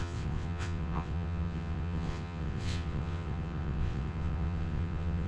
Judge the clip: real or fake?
fake